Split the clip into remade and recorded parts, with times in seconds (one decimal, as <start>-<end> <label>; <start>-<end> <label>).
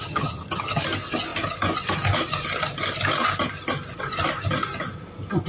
0.0-0.8 remade; 0.8-5.5 recorded